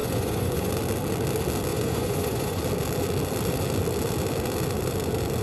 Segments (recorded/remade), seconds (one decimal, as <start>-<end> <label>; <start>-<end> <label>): 0.0-0.7 remade; 0.7-1.7 recorded; 1.7-2.6 remade; 2.6-5.4 recorded